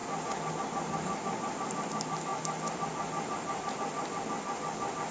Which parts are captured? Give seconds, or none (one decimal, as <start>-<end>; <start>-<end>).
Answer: 0.0-5.1